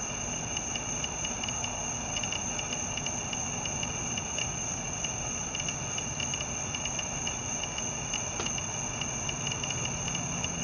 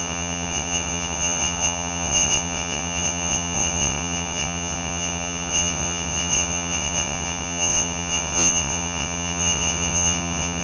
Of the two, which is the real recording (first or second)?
first